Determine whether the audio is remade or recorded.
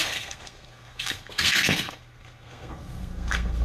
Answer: remade